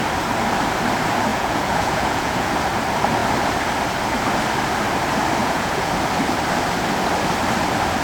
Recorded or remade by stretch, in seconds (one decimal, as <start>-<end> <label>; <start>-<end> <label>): 0.0-1.3 recorded; 1.3-2.5 remade; 2.5-5.4 recorded; 5.4-5.9 remade; 5.9-8.0 recorded

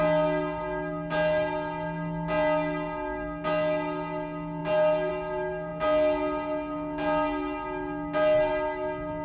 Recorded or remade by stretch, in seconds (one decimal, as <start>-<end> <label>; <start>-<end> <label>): 0.0-9.2 recorded

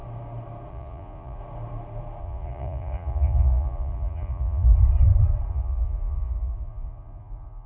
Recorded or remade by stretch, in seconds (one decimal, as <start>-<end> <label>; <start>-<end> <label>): 0.0-0.7 recorded; 0.7-1.4 remade; 1.4-2.2 recorded; 2.2-4.7 remade; 4.7-5.5 recorded; 5.5-7.7 remade